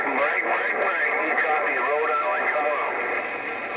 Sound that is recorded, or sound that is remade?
recorded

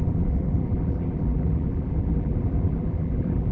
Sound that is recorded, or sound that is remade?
remade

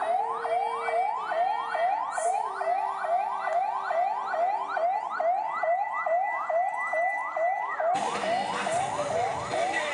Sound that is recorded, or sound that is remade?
recorded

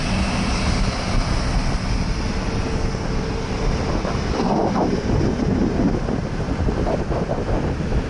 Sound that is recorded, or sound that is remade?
recorded